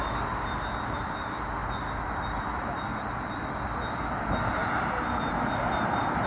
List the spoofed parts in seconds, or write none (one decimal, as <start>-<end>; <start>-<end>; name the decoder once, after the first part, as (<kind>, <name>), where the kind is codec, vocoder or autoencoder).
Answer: none